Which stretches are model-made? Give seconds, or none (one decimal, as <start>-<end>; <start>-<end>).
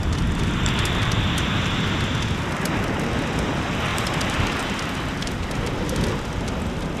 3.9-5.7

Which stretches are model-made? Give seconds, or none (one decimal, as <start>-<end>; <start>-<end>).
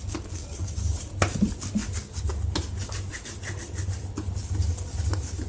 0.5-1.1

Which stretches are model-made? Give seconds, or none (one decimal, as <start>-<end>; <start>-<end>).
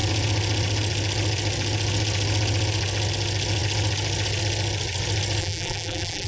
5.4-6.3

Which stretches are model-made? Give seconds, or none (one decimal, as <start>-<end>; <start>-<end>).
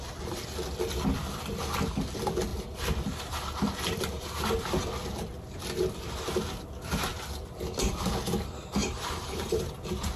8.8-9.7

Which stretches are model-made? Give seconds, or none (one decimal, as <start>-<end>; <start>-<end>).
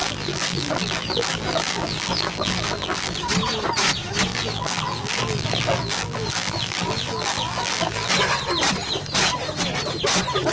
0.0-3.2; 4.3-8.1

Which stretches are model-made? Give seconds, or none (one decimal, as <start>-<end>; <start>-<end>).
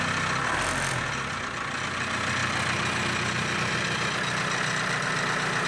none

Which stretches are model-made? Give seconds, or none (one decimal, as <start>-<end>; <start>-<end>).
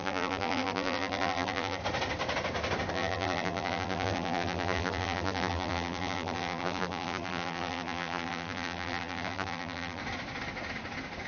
0.0-1.8; 2.9-10.0